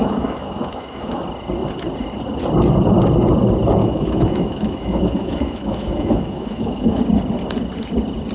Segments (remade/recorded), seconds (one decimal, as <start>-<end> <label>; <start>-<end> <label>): 0.0-1.2 remade; 1.2-3.8 recorded; 3.8-7.0 remade; 7.0-8.3 recorded